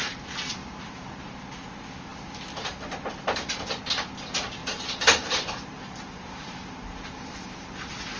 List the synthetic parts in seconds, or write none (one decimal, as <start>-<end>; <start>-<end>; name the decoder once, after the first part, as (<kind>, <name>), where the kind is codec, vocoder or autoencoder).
4.6-7.7 (vocoder, BigVGAN v2)